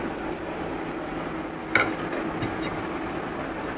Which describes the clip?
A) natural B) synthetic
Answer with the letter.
A